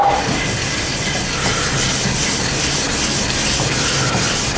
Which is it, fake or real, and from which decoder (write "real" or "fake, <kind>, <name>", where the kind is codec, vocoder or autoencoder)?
real